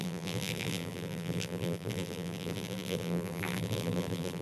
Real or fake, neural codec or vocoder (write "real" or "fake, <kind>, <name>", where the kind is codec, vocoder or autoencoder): fake, vocoder, BigVGAN v2